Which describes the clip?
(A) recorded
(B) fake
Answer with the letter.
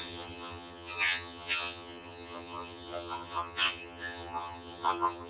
B